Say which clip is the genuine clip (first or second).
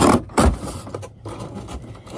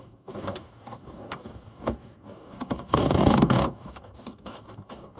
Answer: first